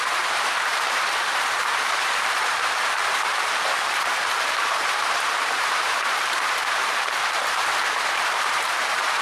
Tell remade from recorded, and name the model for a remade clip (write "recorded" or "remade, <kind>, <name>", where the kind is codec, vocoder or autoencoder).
remade, vocoder, BigVGAN v2